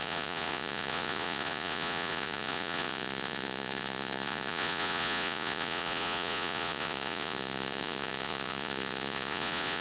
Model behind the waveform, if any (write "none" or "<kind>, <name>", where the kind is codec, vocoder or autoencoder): vocoder, Vocos